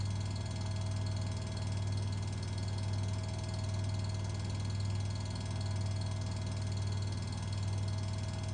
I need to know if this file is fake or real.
real